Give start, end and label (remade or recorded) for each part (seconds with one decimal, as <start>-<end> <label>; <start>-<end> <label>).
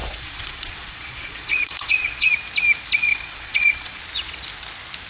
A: 0.0-2.3 remade; 2.3-3.1 recorded; 3.1-4.0 remade; 4.0-5.1 recorded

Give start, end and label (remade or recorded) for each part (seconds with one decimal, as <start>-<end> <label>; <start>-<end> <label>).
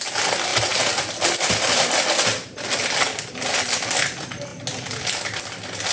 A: 0.0-5.9 recorded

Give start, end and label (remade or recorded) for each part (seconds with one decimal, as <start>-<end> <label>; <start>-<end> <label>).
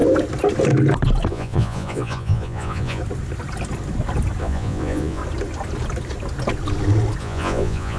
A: 0.0-1.3 recorded; 1.3-3.0 remade; 3.0-4.4 recorded; 4.4-5.2 remade; 5.2-7.2 recorded; 7.2-8.0 remade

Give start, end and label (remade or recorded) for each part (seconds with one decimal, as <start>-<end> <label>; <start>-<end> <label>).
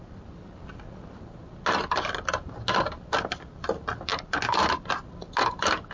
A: 0.0-5.9 recorded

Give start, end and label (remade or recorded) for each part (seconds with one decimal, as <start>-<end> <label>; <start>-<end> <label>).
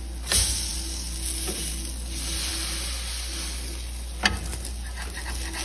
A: 0.0-5.6 recorded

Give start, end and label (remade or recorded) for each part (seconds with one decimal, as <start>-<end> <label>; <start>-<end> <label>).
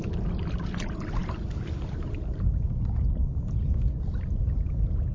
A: 0.0-5.1 recorded